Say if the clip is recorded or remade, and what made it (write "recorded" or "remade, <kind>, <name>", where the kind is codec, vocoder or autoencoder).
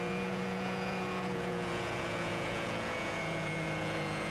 remade, vocoder, Vocos